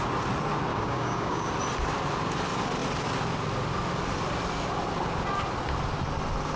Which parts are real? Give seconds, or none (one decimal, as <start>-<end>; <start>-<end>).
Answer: 0.0-0.7; 1.5-6.6